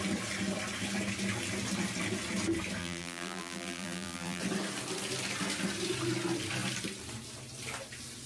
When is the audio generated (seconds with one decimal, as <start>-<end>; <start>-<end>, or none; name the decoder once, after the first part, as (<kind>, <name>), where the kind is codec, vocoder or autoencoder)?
2.8-4.4 (vocoder, BigVGAN v2)